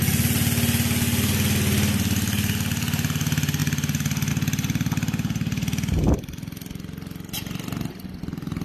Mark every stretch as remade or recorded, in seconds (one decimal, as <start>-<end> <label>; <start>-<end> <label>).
0.0-8.6 recorded